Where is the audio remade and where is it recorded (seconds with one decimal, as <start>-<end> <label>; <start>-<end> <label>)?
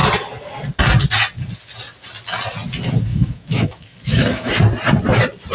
0.0-3.1 recorded; 3.1-4.5 remade; 4.5-5.5 recorded